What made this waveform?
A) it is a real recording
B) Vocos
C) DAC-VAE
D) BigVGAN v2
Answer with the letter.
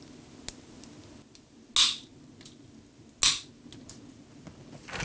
A